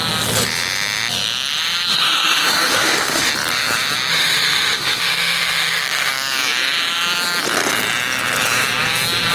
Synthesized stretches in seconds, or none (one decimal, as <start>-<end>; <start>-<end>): 1.9-3.3; 4.1-6.1

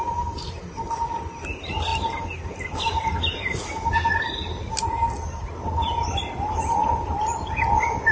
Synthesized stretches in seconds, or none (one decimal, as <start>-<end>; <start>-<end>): none

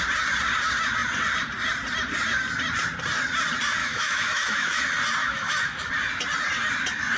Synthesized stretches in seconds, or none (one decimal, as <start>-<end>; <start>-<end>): 3.8-4.8; 5.2-5.9

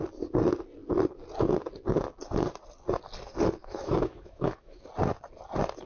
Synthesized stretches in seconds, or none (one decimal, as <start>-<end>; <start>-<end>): 3.6-4.9

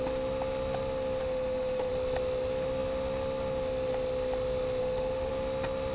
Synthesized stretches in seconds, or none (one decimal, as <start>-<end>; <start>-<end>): 1.2-1.9; 4.8-5.3

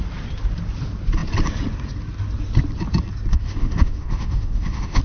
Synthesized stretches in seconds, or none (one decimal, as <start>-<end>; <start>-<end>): 3.3-5.0

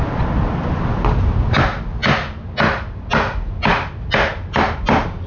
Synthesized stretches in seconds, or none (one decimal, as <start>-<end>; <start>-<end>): none

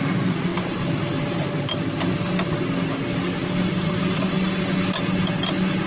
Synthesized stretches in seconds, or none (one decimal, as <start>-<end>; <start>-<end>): none